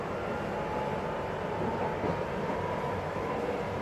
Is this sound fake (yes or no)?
no